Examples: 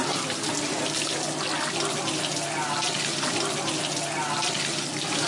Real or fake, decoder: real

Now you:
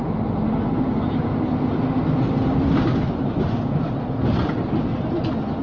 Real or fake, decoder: real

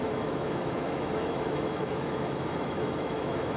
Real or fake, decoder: fake, autoencoder, DAC-VAE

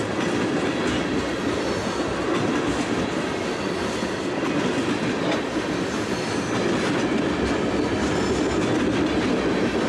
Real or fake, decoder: real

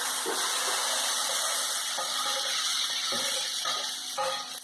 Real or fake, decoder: real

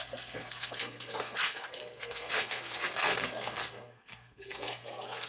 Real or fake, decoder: fake, codec, SNAC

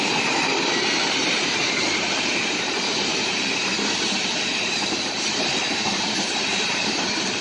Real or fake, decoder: fake, vocoder, BigVGAN v2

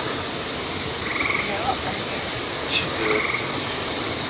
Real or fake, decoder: real